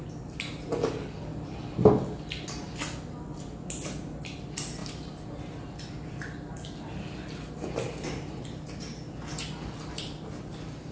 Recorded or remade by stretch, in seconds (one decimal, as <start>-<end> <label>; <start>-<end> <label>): 0.0-1.3 recorded; 1.3-1.9 remade; 1.9-10.9 recorded